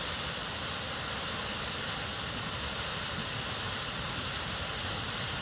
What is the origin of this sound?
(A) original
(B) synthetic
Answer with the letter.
A